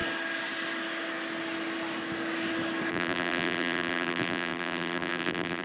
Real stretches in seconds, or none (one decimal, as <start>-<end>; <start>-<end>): 0.0-2.9